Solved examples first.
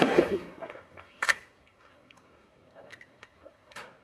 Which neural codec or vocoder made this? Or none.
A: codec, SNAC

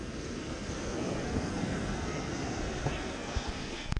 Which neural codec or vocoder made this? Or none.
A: codec, SNAC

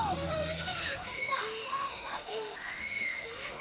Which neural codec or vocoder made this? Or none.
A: autoencoder, DAC-VAE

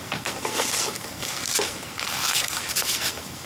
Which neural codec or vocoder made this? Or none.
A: codec, SNAC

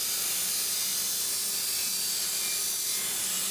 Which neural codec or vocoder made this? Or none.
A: vocoder, BigVGAN v2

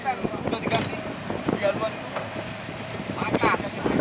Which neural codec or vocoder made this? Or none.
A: none